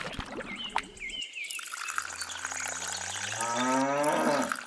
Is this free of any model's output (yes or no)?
yes